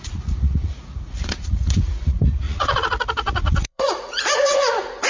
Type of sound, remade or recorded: remade